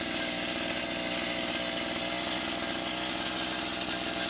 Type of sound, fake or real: real